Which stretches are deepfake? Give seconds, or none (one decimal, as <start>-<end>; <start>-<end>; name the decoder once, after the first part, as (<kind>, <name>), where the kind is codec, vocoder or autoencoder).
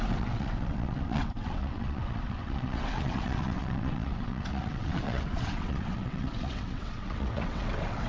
0.0-8.1 (vocoder, WaveNeXt)